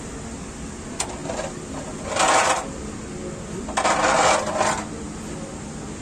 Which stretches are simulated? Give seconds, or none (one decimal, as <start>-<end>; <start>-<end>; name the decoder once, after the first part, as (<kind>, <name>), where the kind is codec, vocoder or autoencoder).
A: none